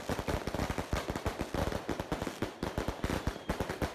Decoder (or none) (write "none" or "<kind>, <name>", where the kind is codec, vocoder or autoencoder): none